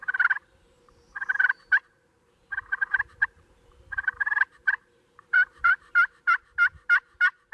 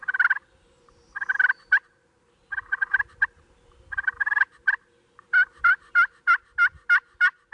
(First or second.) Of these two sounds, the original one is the second